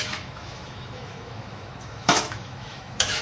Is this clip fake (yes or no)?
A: yes